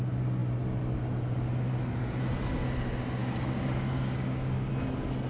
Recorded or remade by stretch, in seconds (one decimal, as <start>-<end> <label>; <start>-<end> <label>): 0.0-3.2 recorded; 3.2-4.7 remade; 4.7-5.3 recorded